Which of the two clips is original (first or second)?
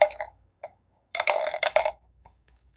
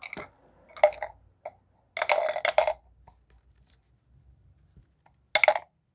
second